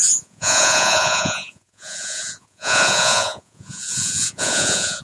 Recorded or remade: remade